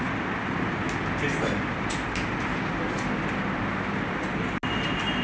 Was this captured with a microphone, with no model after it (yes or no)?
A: yes